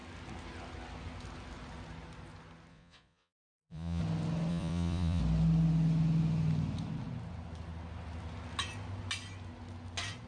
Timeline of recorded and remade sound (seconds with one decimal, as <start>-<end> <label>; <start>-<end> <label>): 0.0-2.7 recorded; 2.7-4.0 remade; 4.0-4.5 recorded; 4.5-5.2 remade; 5.2-10.3 recorded

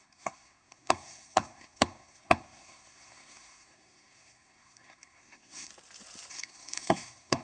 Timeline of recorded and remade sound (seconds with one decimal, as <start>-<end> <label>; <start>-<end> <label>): 0.0-5.7 remade; 5.7-6.3 recorded; 6.3-7.4 remade

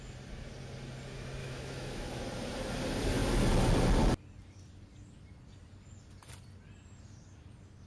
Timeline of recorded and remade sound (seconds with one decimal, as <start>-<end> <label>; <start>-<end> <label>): 0.0-1.4 recorded; 1.4-2.2 remade; 2.2-7.9 recorded

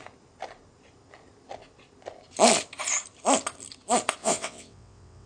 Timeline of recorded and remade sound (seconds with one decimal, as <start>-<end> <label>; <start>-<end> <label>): 0.0-4.2 recorded; 4.2-5.3 remade